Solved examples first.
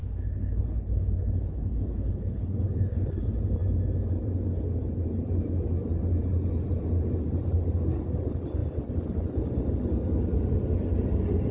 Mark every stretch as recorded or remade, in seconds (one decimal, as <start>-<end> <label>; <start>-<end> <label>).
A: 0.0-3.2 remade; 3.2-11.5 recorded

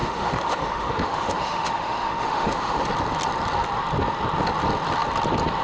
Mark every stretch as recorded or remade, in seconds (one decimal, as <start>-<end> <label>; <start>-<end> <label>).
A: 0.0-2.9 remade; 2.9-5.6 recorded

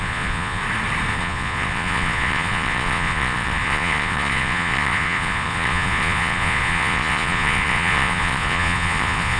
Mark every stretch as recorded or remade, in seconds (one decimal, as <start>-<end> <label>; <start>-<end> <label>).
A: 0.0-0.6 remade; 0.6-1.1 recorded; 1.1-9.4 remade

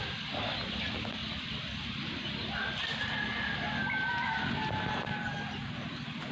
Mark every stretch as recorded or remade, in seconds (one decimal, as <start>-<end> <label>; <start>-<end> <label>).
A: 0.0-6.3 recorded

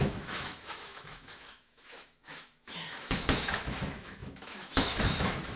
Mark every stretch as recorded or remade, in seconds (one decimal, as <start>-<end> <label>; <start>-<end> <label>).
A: 0.0-5.6 remade

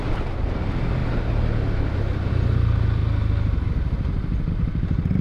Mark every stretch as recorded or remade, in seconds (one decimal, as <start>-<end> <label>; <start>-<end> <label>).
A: 0.0-5.2 recorded